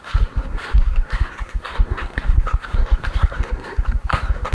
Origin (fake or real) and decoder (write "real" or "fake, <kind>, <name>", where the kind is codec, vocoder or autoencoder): fake, codec, SNAC